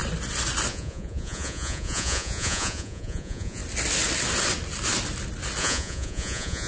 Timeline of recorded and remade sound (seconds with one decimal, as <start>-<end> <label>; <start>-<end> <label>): 0.0-0.7 recorded; 0.7-3.6 remade; 3.6-5.6 recorded; 5.6-6.7 remade